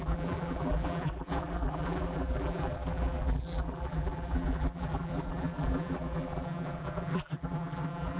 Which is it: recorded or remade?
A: remade